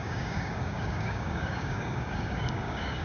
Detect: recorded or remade remade